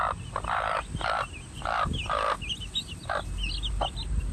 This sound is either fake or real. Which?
real